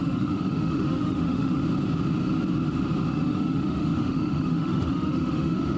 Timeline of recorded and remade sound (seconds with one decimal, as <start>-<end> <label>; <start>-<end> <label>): 0.0-1.6 remade; 1.6-3.1 recorded; 3.1-5.8 remade